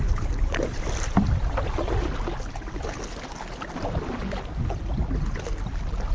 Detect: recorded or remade recorded